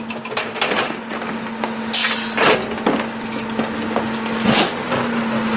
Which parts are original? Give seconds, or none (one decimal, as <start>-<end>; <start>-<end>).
0.0-5.6